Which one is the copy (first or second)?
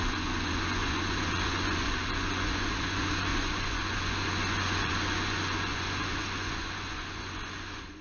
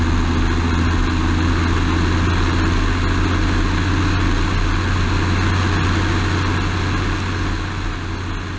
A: first